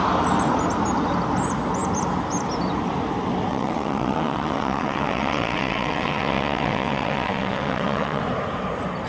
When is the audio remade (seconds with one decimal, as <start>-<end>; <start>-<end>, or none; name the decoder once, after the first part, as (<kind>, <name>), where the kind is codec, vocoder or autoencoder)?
3.5-8.2 (vocoder, WaveNeXt)